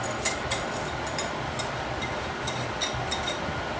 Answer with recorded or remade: recorded